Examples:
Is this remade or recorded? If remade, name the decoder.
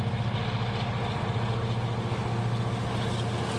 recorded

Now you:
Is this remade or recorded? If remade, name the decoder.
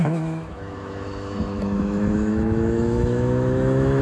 remade, autoencoder, DAC-VAE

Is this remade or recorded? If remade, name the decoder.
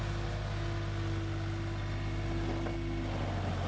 recorded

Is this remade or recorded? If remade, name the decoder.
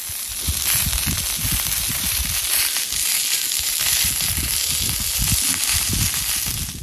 recorded